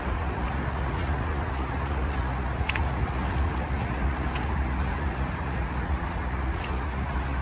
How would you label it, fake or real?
fake